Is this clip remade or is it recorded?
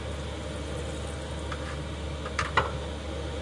recorded